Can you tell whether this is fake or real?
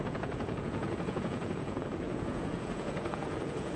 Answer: fake